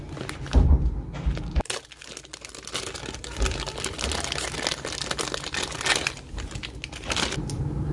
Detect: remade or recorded recorded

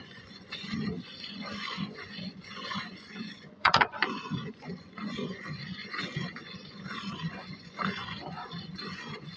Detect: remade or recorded remade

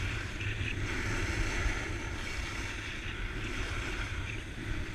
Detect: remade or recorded recorded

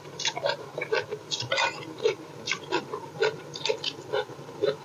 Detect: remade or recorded recorded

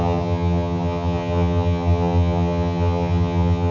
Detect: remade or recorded remade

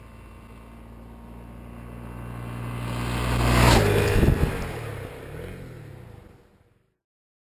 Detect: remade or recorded recorded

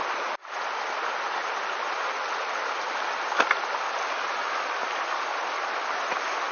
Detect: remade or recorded recorded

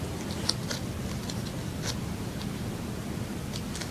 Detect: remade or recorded recorded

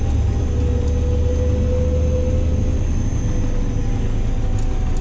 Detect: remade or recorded recorded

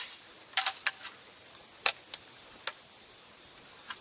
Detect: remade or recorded recorded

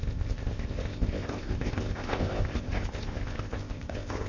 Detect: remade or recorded remade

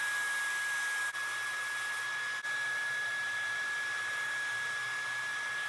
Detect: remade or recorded recorded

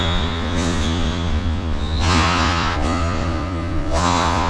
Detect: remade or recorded remade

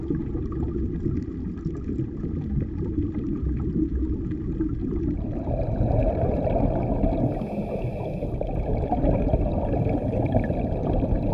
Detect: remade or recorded remade